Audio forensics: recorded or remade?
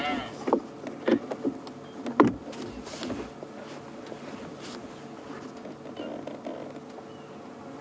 recorded